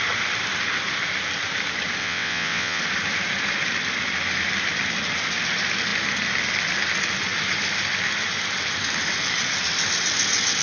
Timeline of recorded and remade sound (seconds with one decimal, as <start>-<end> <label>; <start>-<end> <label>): 0.0-2.0 recorded; 2.0-2.8 remade; 2.8-10.6 recorded